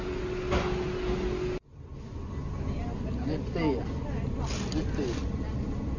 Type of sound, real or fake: real